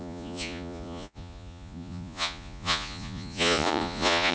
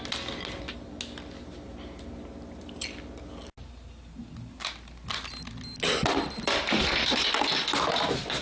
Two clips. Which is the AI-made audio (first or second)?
first